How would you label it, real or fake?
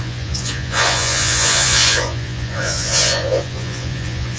fake